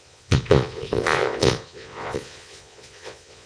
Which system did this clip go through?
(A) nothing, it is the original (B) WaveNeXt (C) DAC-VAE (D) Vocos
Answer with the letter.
D